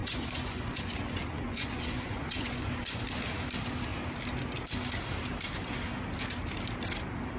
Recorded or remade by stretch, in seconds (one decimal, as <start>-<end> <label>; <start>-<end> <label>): 0.0-3.0 remade; 3.0-7.4 recorded